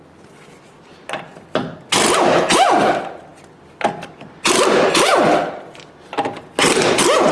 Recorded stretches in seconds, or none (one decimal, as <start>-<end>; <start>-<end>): 0.0-7.3